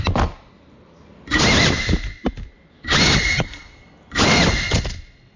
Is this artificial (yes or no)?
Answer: yes